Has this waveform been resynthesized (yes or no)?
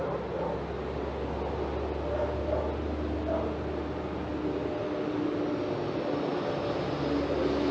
no